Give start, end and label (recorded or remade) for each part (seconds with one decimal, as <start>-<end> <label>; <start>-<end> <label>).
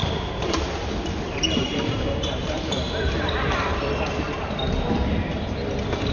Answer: 0.0-3.7 remade; 3.7-6.1 recorded